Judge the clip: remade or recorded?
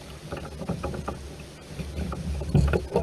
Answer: recorded